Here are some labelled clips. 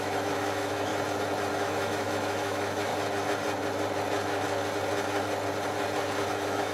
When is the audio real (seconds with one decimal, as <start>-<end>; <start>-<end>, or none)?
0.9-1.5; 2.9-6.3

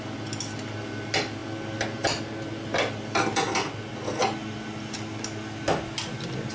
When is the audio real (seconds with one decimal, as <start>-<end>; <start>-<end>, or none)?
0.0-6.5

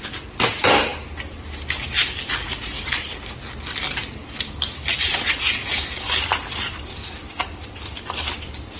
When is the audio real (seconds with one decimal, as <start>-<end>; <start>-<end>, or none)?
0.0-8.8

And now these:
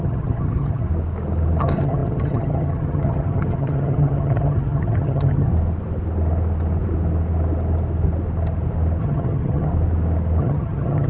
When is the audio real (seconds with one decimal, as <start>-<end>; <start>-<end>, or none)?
0.9-1.6; 5.5-9.0; 9.7-10.4

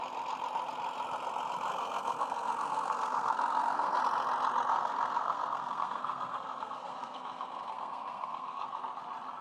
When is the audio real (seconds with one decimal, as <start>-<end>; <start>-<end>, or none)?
0.0-1.7; 4.0-4.7; 8.8-9.4

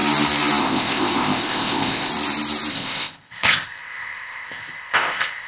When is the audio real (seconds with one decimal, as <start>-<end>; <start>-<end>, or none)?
0.0-0.6; 2.1-2.7

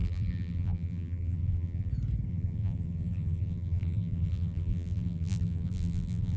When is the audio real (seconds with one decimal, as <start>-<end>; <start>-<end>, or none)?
1.9-2.3

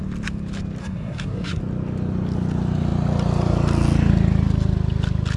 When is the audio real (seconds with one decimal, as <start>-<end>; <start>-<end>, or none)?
0.0-0.8; 1.6-5.4